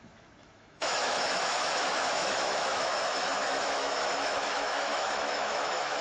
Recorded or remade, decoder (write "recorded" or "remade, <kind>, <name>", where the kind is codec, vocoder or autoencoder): remade, autoencoder, DAC-VAE